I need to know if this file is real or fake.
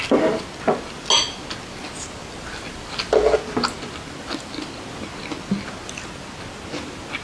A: real